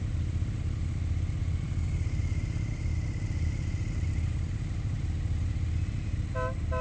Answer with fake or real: real